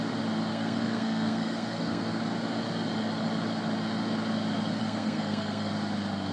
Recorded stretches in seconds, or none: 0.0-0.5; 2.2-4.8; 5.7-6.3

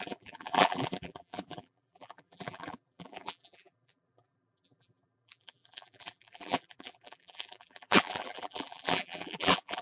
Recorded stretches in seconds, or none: none

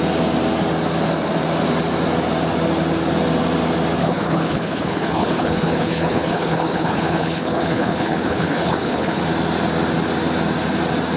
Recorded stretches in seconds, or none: 0.0-4.0; 9.2-11.2

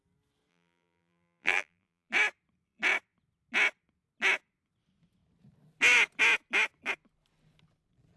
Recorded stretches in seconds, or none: 0.0-0.5; 2.1-8.2